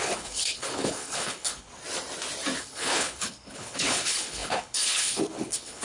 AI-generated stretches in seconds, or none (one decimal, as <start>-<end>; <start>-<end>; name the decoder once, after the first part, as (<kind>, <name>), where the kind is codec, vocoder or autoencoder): 0.0-1.7 (codec, HILCodec); 2.6-5.8